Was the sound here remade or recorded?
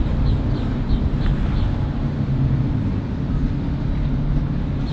recorded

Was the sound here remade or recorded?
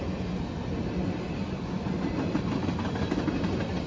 recorded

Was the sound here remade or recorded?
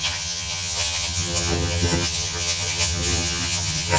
remade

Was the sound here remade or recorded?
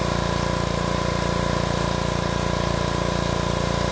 recorded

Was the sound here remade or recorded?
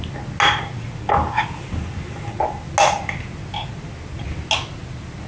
recorded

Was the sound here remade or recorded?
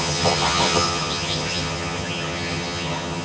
remade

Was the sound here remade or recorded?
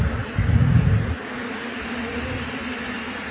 recorded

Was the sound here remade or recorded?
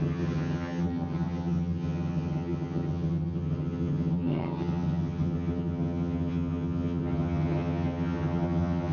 remade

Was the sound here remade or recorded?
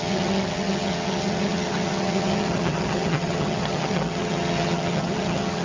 remade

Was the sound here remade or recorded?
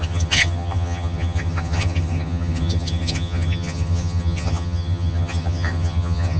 remade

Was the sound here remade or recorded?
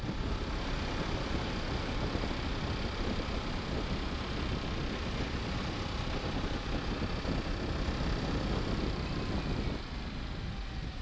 recorded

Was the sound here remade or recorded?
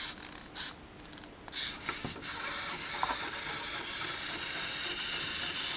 recorded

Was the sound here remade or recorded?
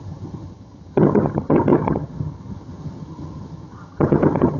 remade